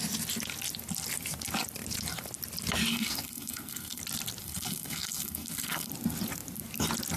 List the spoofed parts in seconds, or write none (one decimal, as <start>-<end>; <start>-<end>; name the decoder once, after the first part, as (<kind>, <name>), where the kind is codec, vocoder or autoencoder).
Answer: 2.9-4.0 (codec, SNAC); 4.4-5.9